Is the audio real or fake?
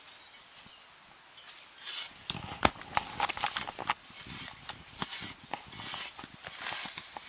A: real